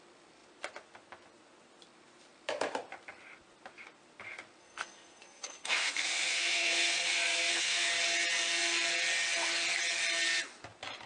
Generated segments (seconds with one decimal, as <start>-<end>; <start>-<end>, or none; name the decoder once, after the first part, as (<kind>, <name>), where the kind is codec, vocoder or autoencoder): 4.6-7.9 (codec, SNAC)